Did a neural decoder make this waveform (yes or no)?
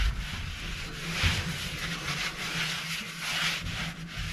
no